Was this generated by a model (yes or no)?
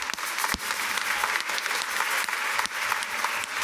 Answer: no